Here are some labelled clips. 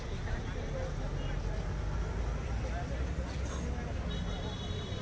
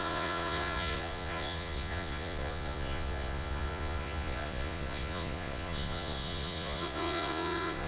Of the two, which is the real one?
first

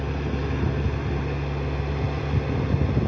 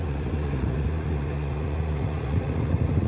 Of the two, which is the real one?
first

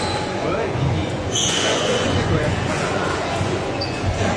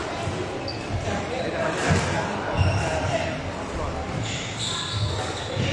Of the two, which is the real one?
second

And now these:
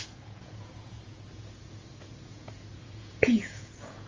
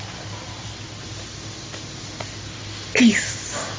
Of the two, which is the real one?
second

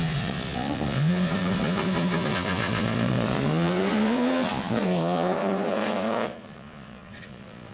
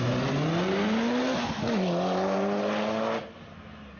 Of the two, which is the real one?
second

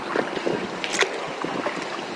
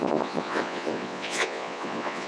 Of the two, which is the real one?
first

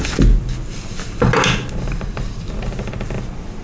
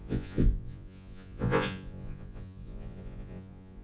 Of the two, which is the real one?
first